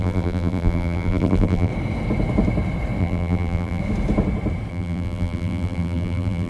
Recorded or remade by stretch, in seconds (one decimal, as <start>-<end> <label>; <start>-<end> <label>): 0.0-1.7 remade; 1.7-3.0 recorded; 3.0-3.8 remade; 3.8-4.7 recorded; 4.7-6.5 remade